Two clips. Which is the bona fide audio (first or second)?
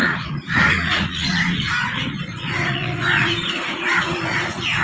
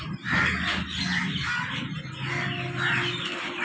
second